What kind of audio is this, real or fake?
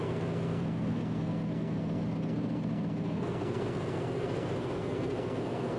fake